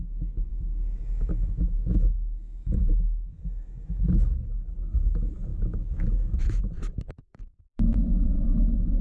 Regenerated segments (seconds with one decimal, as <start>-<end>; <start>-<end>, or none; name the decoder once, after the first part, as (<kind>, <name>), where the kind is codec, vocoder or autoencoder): 0.5-4.0 (autoencoder, DAC-VAE); 5.5-6.6; 7.2-8.0